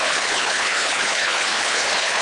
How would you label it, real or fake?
fake